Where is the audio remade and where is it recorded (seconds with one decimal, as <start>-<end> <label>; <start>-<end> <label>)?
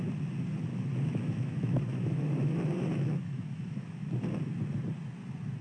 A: 0.0-0.7 recorded; 0.7-4.1 remade; 4.1-5.6 recorded